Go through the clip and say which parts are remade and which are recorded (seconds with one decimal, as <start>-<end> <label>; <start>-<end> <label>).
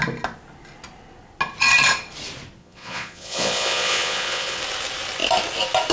0.0-2.6 recorded; 2.6-4.6 remade; 4.6-5.9 recorded